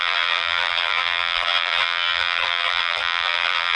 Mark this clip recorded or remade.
remade